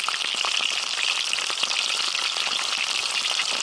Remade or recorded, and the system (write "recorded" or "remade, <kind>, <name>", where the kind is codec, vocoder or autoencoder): recorded